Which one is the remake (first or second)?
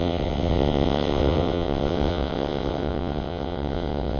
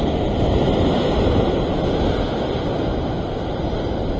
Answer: first